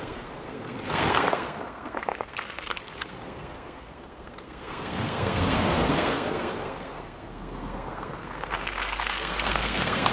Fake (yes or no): yes